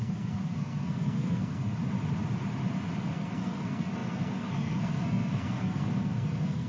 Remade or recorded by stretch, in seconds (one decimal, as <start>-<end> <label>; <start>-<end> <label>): 0.0-1.7 remade; 1.7-3.0 recorded; 3.0-6.7 remade